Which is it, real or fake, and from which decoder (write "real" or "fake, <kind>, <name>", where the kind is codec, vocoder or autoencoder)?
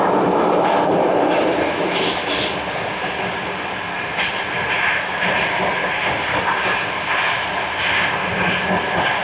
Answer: real